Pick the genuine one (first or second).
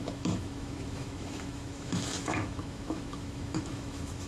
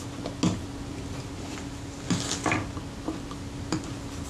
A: second